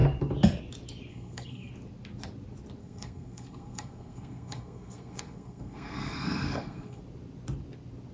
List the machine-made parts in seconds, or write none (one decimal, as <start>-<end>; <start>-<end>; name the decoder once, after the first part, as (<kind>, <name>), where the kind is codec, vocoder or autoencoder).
1.1-1.7 (codec, SNAC); 2.8-7.0